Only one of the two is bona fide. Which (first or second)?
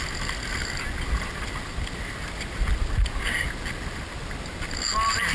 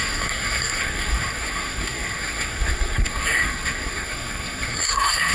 first